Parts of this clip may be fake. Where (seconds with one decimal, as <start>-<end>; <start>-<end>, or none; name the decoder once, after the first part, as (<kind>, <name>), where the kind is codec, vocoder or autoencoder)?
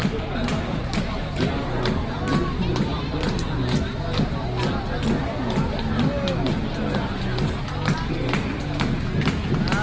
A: 0.0-1.5 (vocoder, BigVGAN v2)